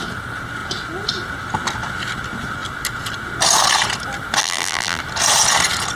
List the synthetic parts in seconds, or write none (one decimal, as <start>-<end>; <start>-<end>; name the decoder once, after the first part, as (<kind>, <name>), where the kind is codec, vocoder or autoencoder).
4.4-5.0 (vocoder, BigVGAN v2)